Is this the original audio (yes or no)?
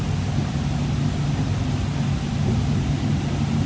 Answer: yes